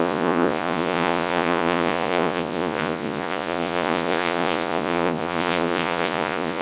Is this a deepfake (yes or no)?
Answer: yes